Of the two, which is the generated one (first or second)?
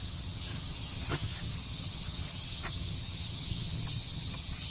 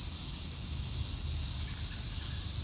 first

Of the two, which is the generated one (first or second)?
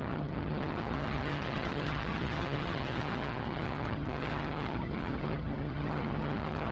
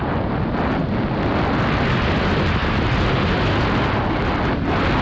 first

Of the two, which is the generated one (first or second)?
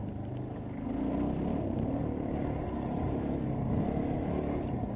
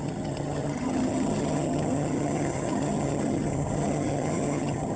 second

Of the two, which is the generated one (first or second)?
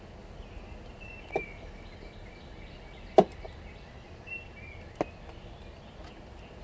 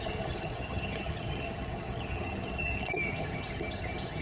second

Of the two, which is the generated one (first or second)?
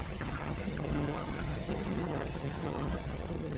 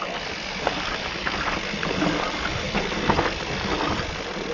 first